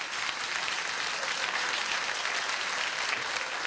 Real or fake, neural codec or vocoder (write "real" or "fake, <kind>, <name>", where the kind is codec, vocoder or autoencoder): real